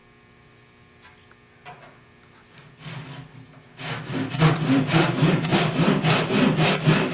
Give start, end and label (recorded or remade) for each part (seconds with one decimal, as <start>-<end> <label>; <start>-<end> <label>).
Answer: 0.0-4.3 recorded; 4.3-7.1 remade